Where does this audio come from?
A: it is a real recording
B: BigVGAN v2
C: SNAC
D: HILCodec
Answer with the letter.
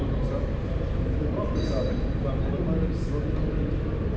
B